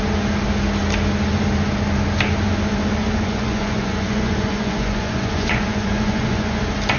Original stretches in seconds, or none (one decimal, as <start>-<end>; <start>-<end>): 0.0-3.0; 6.6-7.0